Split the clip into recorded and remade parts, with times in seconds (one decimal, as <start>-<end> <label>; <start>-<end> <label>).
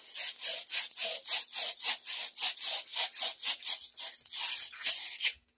0.0-5.6 recorded